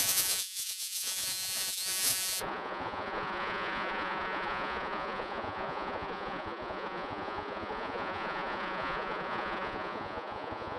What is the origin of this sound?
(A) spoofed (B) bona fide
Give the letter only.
A